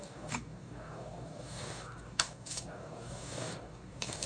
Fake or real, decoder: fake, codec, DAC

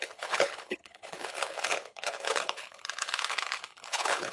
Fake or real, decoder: fake, codec, HILCodec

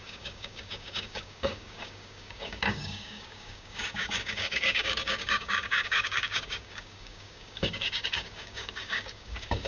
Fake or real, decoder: fake, codec, DAC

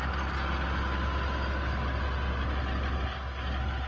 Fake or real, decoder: real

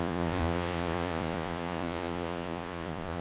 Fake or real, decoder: fake, vocoder, Vocos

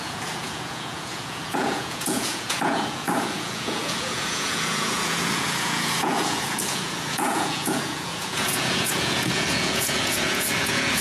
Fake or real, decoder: fake, vocoder, Vocos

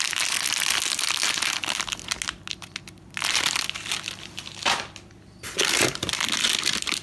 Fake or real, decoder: real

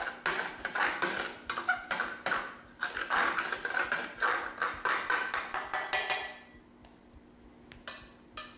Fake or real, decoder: real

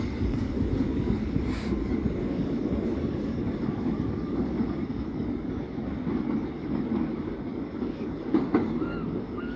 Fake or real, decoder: fake, codec, DAC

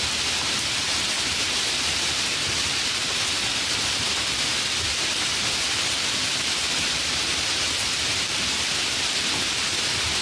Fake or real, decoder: real